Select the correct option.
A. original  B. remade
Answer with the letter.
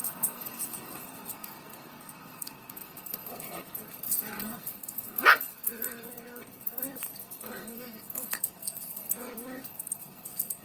B